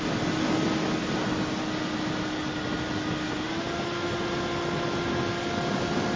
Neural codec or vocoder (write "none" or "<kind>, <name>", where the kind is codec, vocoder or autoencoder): none